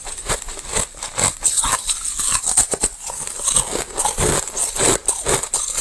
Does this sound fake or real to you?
real